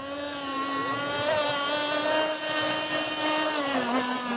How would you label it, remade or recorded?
recorded